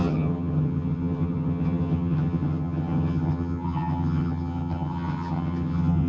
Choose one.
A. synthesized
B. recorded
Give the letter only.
A